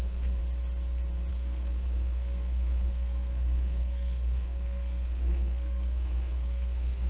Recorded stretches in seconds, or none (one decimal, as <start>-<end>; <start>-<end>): 0.4-1.3